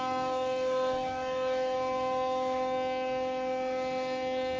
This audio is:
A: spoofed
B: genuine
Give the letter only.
A